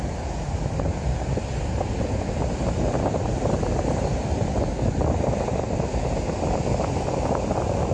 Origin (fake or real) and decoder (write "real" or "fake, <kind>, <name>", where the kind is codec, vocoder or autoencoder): real